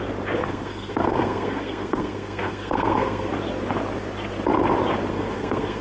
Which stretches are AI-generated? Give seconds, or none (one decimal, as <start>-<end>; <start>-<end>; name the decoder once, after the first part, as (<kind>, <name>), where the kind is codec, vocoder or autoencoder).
0.4-3.3 (codec, SNAC); 5.1-5.8